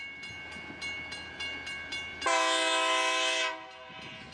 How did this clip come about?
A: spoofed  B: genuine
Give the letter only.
B